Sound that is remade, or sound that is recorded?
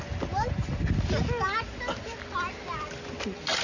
recorded